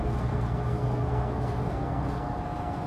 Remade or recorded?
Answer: remade